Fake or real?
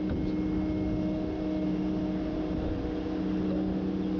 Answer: real